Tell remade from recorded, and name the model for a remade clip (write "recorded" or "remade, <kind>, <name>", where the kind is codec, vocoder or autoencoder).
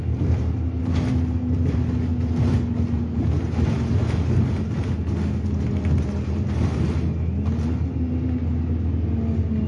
recorded